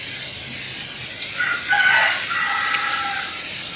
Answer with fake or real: real